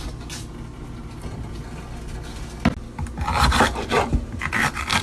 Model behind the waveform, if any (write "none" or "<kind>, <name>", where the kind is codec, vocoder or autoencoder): none